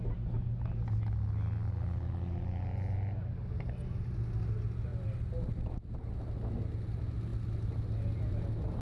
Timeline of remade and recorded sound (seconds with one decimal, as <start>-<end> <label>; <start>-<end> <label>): 0.0-8.8 recorded